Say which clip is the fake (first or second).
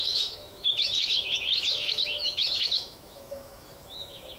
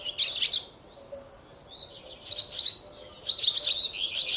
first